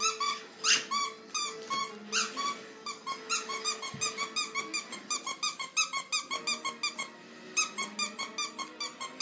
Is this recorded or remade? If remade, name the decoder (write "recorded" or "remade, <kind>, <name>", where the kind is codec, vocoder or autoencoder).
recorded